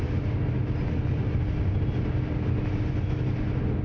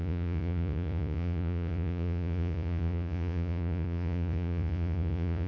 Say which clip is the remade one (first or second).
second